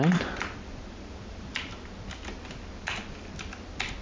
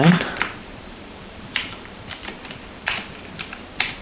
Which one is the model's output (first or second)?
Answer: second